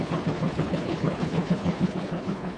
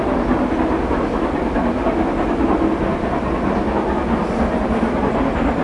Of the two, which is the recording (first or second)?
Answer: second